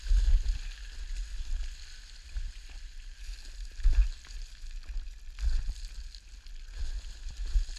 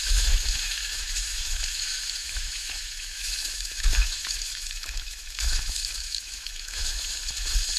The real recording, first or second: first